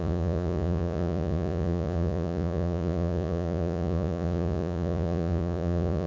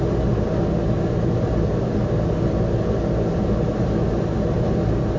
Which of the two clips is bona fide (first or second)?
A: second